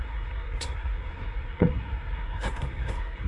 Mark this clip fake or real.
fake